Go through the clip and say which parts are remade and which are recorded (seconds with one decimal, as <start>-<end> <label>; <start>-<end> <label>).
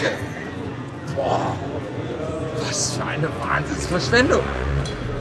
0.0-5.2 remade